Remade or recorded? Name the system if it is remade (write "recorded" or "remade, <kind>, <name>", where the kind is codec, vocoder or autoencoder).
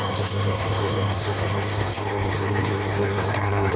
remade, codec, SNAC